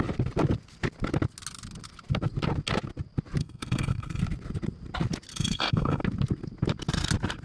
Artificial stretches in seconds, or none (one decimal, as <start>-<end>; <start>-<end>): 3.4-4.2; 5.3-6.0